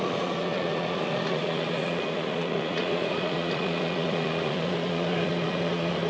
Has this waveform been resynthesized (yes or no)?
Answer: yes